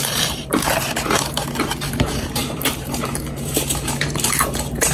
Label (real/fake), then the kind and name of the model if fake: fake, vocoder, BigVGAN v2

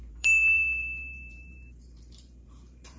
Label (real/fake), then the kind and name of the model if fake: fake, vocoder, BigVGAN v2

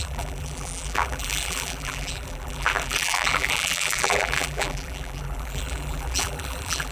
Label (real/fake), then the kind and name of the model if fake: fake, vocoder, BigVGAN v2